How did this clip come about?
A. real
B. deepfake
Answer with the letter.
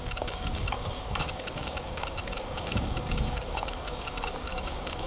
B